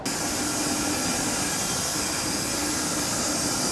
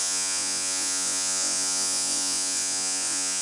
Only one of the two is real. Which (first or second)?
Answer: first